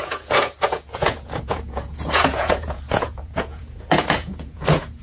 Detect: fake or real fake